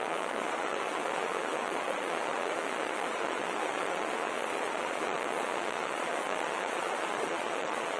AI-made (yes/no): yes